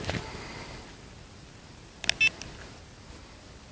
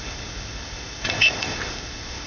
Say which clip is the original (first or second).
first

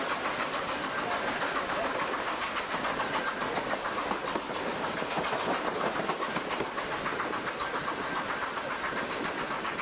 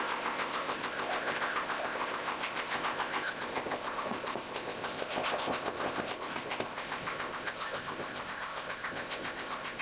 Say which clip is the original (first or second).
first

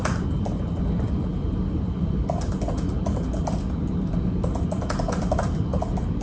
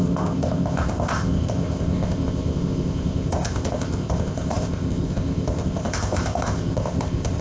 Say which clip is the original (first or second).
first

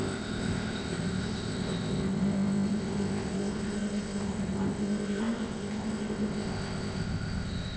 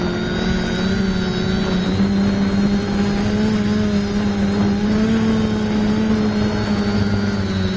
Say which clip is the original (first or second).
second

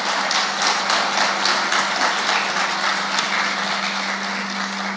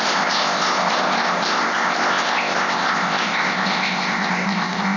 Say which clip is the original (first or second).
first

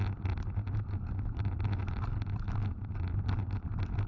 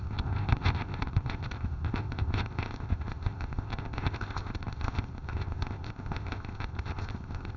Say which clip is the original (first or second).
first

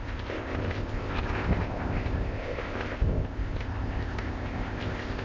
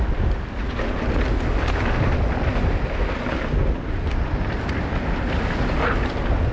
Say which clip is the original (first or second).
second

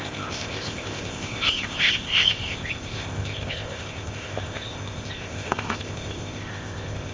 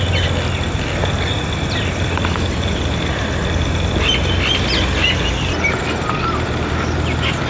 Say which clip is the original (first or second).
second